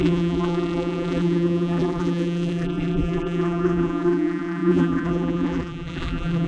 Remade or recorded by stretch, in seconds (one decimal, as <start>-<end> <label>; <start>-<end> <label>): 0.0-6.5 remade